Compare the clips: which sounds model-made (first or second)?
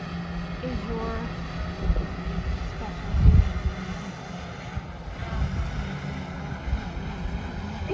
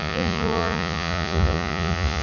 second